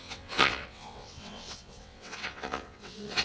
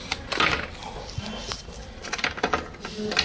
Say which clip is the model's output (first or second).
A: first